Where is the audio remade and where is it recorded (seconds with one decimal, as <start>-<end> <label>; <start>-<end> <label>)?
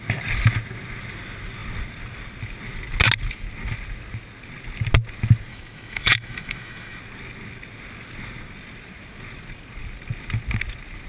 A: 0.0-5.5 recorded; 5.5-7.0 remade; 7.0-11.1 recorded